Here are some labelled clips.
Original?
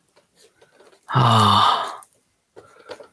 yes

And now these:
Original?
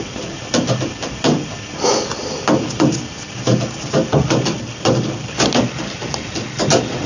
yes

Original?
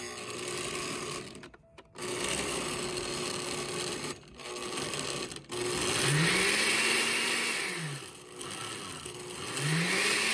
yes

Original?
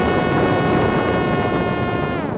yes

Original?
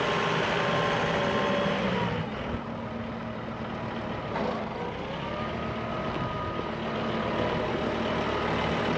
yes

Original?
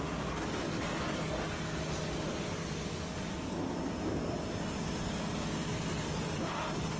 yes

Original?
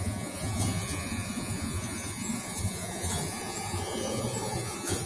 no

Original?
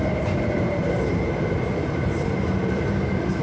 no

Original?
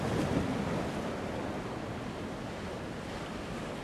yes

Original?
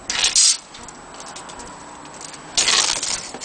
yes